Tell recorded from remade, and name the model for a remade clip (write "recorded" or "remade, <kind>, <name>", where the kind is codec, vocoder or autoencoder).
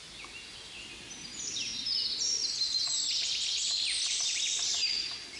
recorded